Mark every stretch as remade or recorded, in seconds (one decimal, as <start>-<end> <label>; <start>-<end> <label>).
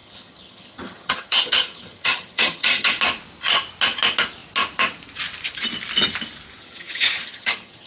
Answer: 0.0-2.9 remade; 2.9-6.6 recorded; 6.6-7.9 remade